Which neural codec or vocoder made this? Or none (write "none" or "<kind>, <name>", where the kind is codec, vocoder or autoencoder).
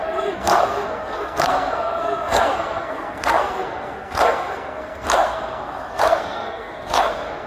codec, SNAC